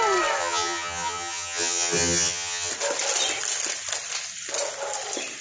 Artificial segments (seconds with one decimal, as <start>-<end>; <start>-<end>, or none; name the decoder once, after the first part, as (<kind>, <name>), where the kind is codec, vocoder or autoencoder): 0.4-2.7 (vocoder, HiFi-GAN)

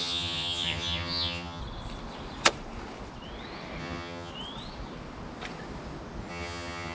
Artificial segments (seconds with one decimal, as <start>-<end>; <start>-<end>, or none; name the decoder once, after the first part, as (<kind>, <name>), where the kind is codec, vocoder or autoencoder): 0.0-1.6 (vocoder, HiFi-GAN); 3.8-4.3; 6.3-6.9